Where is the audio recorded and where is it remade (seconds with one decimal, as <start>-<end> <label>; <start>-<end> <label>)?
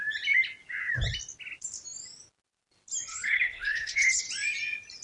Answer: 0.0-3.1 recorded; 3.1-4.2 remade; 4.2-5.0 recorded